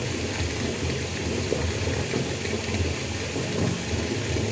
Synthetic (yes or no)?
no